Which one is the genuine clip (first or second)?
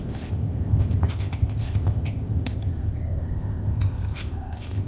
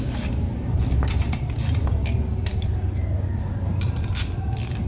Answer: second